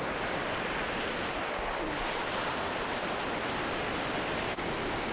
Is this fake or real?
real